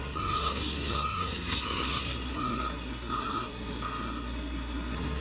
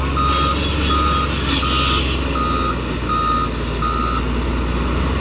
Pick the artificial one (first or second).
first